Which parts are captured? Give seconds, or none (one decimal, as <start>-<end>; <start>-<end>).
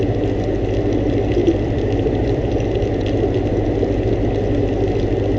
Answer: 0.0-1.4; 4.1-5.4